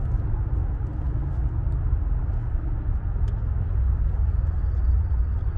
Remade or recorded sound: recorded